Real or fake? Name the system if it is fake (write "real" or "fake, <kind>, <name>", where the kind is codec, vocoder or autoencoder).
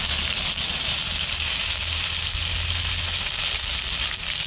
real